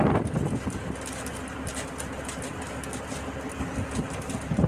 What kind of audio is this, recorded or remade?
recorded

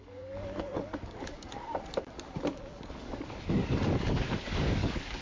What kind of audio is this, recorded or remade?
remade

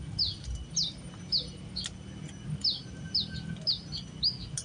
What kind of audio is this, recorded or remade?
recorded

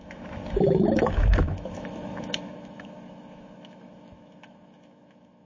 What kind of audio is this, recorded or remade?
remade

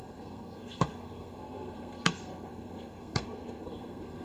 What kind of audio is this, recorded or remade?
remade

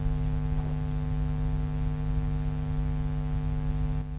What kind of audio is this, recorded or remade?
recorded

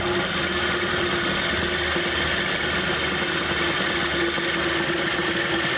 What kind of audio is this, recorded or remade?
recorded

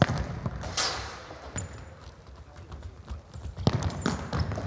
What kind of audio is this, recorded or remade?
recorded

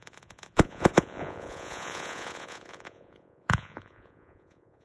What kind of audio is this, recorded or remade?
remade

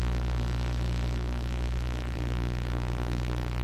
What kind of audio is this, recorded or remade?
remade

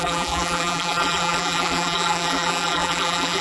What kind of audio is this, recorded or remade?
remade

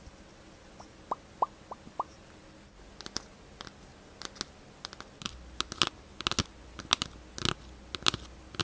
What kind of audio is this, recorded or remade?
recorded